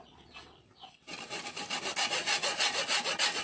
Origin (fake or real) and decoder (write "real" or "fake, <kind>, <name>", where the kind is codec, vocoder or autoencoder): real